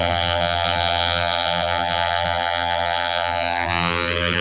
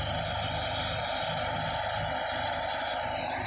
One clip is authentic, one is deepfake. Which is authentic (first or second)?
second